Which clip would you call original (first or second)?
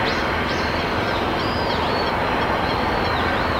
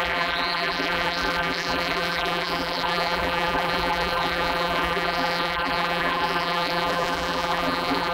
first